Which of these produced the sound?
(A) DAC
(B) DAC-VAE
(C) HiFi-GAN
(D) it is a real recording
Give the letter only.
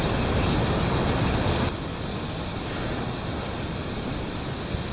D